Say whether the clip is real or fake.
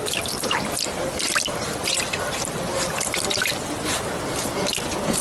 real